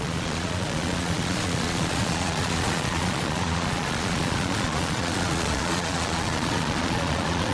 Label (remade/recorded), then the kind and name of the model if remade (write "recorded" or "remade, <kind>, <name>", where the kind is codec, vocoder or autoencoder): remade, vocoder, Vocos